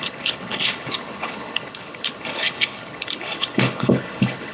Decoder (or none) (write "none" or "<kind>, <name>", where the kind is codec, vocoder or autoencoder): codec, HILCodec